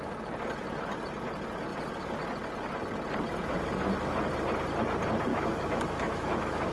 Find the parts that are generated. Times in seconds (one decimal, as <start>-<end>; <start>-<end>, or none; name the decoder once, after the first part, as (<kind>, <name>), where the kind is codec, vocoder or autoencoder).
5.3-6.7 (autoencoder, DAC-VAE)